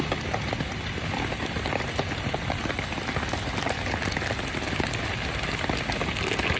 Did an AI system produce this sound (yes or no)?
no